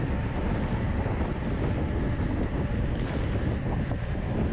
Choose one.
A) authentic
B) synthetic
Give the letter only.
A